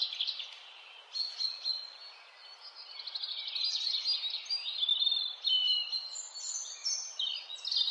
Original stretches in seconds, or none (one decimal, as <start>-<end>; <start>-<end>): 0.0-7.9